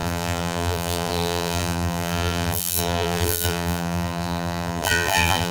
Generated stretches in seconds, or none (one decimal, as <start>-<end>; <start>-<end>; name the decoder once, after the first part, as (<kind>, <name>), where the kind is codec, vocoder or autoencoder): 0.0-5.5 (vocoder, BigVGAN v2)